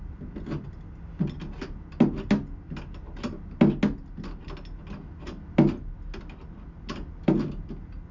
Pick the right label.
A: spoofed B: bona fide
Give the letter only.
B